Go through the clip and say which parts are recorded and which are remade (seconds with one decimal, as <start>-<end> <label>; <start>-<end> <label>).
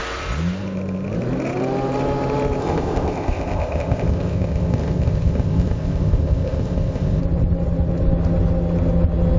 0.0-2.6 recorded; 2.6-7.2 remade; 7.2-9.4 recorded